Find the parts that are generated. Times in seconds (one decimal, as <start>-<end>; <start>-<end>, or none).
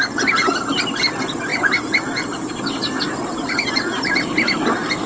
none